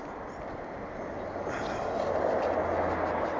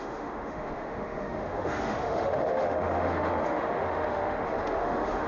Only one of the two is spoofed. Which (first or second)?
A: second